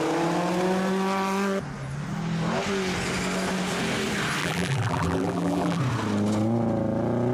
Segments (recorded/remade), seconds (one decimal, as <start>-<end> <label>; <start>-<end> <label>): 0.0-4.4 recorded; 4.4-5.8 remade; 5.8-7.3 recorded